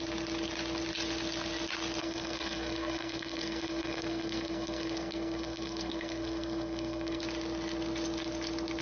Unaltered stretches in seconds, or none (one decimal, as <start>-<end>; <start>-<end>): 0.0-2.0; 7.2-8.8